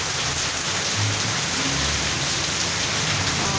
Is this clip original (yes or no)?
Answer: yes